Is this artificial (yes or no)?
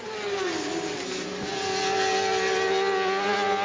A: no